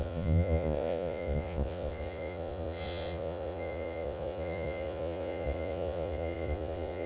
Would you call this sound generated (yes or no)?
yes